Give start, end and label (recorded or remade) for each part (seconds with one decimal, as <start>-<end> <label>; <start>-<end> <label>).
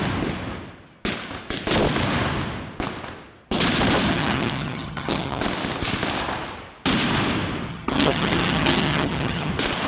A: 0.0-4.1 recorded; 4.1-5.4 remade; 5.4-7.7 recorded; 7.7-9.5 remade; 9.5-9.9 recorded